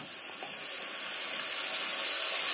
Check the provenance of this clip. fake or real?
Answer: real